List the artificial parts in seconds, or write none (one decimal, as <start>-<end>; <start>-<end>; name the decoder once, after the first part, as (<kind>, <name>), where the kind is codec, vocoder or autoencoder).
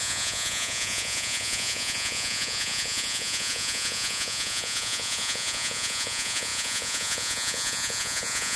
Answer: 0.0-8.6 (vocoder, Vocos)